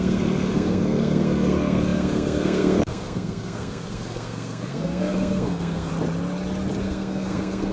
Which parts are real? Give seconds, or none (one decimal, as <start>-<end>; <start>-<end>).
5.9-6.8